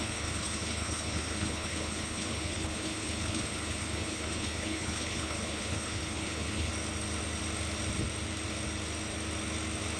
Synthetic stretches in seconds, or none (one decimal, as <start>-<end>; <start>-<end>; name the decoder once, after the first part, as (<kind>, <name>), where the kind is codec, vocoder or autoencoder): 0.0-6.7 (codec, HILCodec)